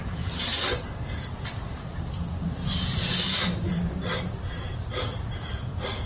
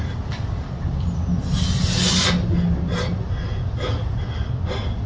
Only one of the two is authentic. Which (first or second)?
second